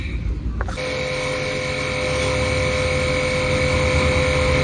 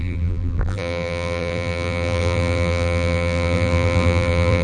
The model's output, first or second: second